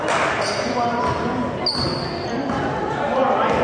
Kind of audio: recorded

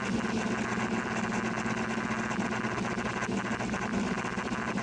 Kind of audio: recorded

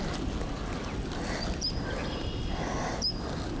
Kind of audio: recorded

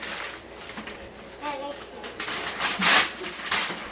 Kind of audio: recorded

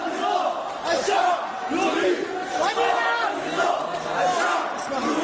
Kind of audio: recorded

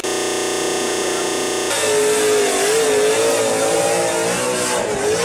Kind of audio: recorded